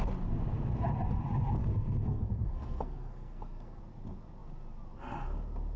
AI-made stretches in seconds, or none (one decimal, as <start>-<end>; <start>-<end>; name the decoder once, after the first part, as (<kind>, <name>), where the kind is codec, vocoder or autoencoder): 1.6-3.8 (codec, SNAC)

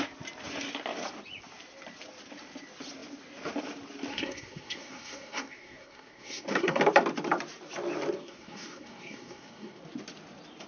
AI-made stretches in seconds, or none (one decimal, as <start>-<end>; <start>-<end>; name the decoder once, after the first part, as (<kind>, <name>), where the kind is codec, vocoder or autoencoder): 4.1-6.8 (codec, SNAC); 8.2-9.8

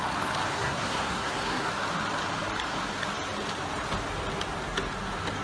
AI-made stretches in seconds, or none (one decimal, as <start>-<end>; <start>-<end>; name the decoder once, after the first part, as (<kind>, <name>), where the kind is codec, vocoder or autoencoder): 0.5-1.7 (codec, SNAC)

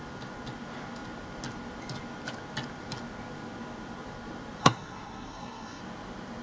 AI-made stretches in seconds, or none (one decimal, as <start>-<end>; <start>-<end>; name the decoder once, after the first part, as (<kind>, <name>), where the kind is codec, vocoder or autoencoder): 4.6-5.8 (codec, SNAC)

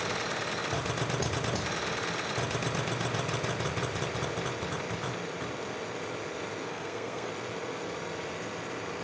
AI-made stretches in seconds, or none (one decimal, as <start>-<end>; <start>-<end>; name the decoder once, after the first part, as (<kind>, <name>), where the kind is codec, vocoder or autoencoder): 6.7-7.3 (codec, SNAC)

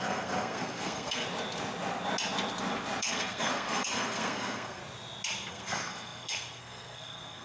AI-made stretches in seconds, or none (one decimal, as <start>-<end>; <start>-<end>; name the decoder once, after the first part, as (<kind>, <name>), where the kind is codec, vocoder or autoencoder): 0.0-1.2 (codec, SNAC); 3.0-4.8; 5.5-7.4